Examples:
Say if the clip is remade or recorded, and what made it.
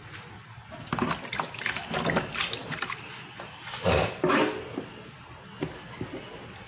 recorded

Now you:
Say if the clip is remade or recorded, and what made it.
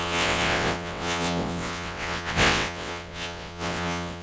remade, vocoder, WaveNeXt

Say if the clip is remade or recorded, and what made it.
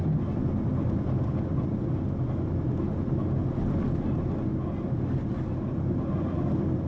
recorded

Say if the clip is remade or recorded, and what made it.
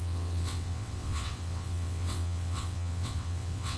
remade, vocoder, WaveNeXt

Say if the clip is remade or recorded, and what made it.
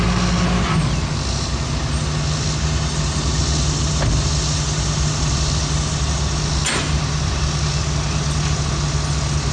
recorded